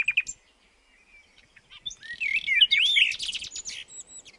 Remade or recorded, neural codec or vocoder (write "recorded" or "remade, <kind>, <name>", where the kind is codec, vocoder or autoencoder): recorded